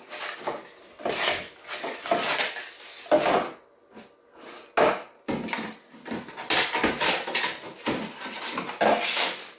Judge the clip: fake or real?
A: real